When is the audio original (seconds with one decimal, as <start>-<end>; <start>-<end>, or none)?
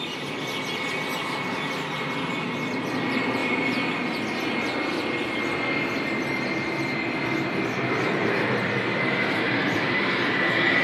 0.0-3.4; 5.4-8.2; 10.0-10.8